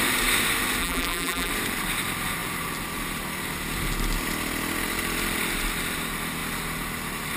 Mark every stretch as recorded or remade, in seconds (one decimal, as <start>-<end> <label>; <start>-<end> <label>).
0.0-0.8 recorded; 0.8-1.5 remade; 1.5-7.4 recorded